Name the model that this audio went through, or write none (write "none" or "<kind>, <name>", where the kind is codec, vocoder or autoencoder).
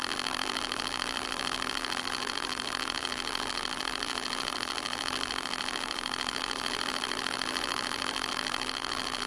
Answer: vocoder, BigVGAN v2